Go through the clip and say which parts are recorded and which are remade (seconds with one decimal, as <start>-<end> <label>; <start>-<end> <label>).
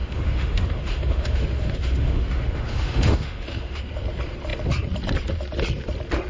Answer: 0.0-3.8 remade; 3.8-6.3 recorded